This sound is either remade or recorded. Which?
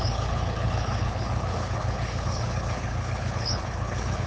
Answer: remade